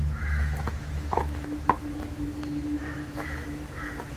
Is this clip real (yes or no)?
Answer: no